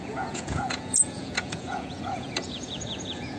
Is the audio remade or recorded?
remade